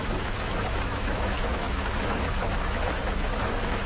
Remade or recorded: remade